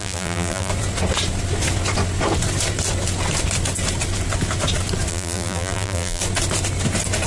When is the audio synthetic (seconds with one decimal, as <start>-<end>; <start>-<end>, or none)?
0.0-0.7; 5.1-6.2